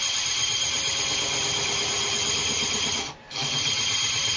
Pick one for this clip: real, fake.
real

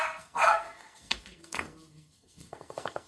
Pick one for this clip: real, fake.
fake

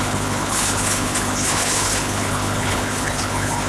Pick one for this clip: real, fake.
fake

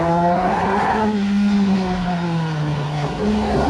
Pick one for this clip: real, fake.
fake